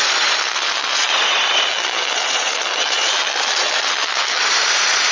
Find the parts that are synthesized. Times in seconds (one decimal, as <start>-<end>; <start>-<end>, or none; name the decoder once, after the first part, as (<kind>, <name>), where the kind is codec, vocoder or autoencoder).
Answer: 0.4-1.1 (vocoder, WaveNeXt); 1.7-4.4